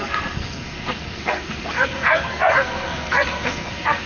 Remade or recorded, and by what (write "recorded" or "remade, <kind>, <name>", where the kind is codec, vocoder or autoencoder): remade, codec, SNAC